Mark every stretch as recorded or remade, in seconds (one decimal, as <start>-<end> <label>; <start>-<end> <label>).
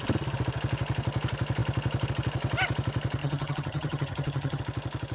0.0-3.2 recorded; 3.2-4.6 remade; 4.6-5.1 recorded